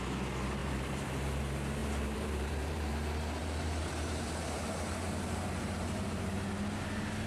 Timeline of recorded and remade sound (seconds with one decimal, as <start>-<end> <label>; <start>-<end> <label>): 0.0-0.6 recorded; 0.6-1.4 remade; 1.4-1.8 recorded; 1.8-2.9 remade; 2.9-3.4 recorded; 3.4-6.3 remade; 6.3-7.3 recorded